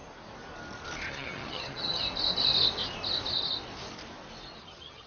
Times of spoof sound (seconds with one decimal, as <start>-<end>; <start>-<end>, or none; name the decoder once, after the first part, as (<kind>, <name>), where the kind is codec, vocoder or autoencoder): 1.1-2.0 (vocoder, HiFi-GAN); 4.6-5.1